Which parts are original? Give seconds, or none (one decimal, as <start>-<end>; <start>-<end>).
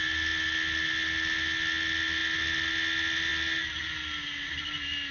0.0-5.1